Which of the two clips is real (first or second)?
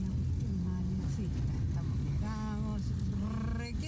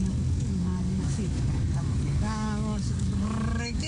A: first